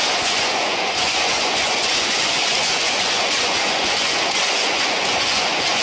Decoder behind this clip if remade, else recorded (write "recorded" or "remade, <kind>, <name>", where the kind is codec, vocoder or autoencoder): remade, vocoder, Vocos